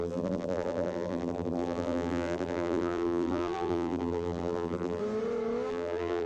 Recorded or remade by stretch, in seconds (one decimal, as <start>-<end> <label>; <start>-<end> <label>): 0.0-5.0 remade; 5.0-5.7 recorded; 5.7-6.3 remade